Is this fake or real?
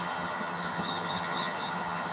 fake